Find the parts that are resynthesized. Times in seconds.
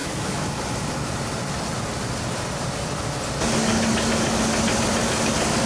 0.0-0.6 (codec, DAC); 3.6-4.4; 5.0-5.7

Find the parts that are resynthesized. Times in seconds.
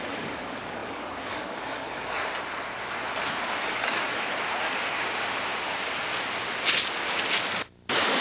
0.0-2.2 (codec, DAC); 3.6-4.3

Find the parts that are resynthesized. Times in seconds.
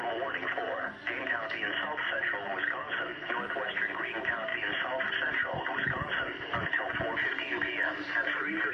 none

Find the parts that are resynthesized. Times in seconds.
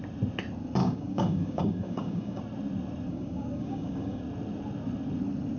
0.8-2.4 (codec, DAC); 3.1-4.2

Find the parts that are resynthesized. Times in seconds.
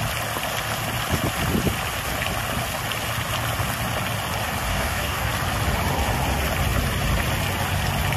4.7-5.3 (codec, DAC)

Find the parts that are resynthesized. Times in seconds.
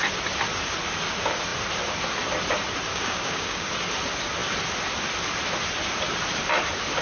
2.9-3.7 (codec, DAC)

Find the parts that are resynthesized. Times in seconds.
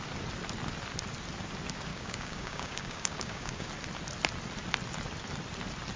1.9-3.7 (codec, DAC)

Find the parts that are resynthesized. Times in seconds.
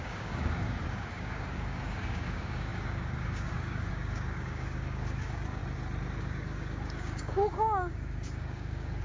0.0-5.6 (codec, DAC); 6.2-9.0